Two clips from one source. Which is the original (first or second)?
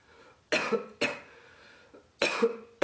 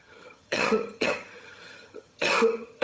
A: first